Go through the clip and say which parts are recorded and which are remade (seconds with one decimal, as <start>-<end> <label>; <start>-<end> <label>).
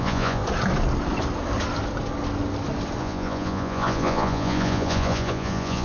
0.0-0.4 remade; 0.4-3.0 recorded; 3.0-5.8 remade